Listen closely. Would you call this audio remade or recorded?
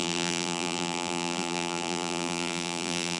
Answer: remade